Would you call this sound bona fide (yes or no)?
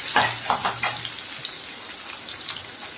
yes